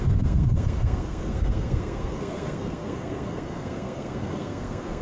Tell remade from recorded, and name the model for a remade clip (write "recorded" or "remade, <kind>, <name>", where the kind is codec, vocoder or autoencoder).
remade, codec, SNAC